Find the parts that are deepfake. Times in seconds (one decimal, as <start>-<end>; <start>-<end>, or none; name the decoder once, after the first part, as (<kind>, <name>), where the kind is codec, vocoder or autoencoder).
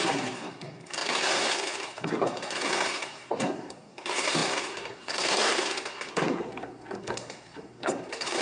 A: 0.0-8.4 (codec, SNAC)